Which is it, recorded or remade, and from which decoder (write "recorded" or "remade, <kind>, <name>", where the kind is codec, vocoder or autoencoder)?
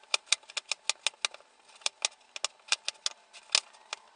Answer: recorded